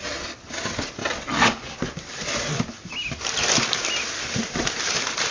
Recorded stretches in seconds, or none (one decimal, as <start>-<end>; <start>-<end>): 1.0-2.4